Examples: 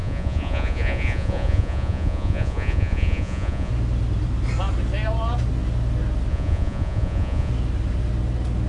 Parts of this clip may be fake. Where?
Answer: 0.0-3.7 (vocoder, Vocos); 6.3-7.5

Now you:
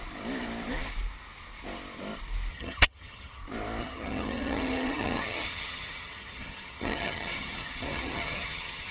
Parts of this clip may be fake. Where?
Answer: 2.5-3.4 (vocoder, HiFi-GAN); 3.8-8.9